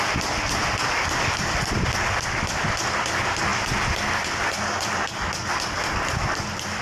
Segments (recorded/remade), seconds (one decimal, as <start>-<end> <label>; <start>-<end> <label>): 0.0-6.8 recorded